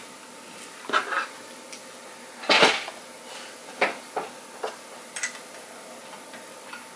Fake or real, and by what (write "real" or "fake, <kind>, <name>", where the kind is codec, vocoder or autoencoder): real